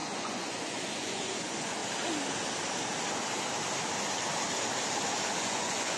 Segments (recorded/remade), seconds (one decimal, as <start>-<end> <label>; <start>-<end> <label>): 0.0-1.8 remade; 1.8-5.4 recorded; 5.4-6.0 remade